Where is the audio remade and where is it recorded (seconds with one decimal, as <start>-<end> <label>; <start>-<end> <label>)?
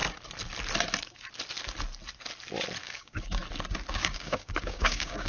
0.0-2.8 recorded; 2.8-3.4 remade; 3.4-3.9 recorded; 3.9-5.3 remade